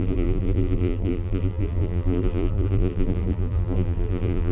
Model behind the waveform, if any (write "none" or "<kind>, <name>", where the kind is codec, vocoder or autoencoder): vocoder, BigVGAN v2